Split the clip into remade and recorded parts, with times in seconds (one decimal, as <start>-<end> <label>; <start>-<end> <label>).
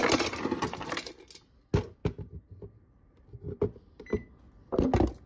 0.0-1.2 remade; 1.2-5.3 recorded